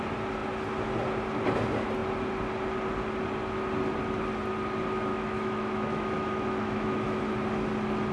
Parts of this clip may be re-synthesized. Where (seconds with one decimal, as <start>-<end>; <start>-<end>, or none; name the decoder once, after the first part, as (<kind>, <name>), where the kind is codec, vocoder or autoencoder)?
5.1-7.2 (autoencoder, DAC-VAE)